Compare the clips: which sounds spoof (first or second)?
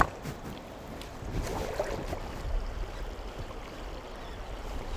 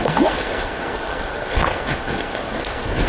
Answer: second